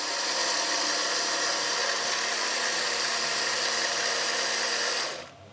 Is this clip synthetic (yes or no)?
no